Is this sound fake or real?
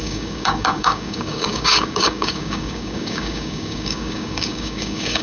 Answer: fake